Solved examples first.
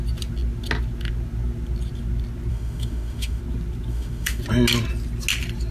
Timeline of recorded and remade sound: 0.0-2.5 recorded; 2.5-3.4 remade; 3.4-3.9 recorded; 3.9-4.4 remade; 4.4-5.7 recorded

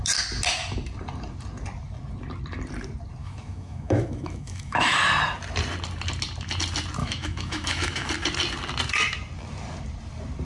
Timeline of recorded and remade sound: 0.0-3.2 recorded; 3.2-5.0 remade; 5.0-7.0 recorded; 7.0-8.1 remade; 8.1-10.4 recorded

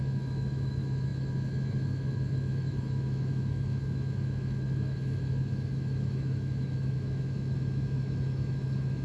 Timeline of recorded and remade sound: 0.0-9.0 remade

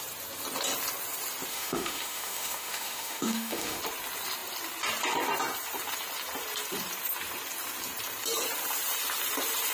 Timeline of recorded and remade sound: 0.0-1.5 recorded; 1.5-3.8 remade; 3.8-9.7 recorded

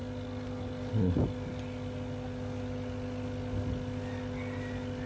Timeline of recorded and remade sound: 0.0-5.1 recorded

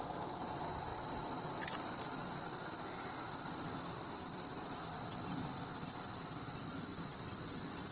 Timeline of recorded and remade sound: 0.0-7.9 recorded

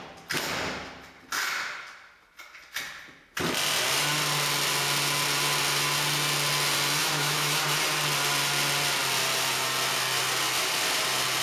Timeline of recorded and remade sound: 0.0-7.0 recorded; 7.0-7.6 remade; 7.6-11.4 recorded

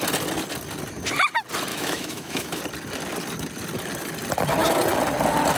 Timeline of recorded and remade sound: 0.0-1.7 recorded; 1.7-2.6 remade; 2.6-5.6 recorded